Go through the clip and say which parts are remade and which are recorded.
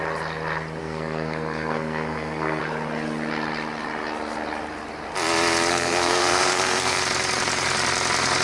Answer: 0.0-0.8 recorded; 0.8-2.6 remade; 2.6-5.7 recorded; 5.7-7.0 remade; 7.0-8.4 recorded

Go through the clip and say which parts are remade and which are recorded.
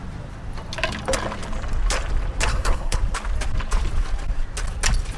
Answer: 0.0-2.5 recorded; 2.5-3.0 remade; 3.0-5.2 recorded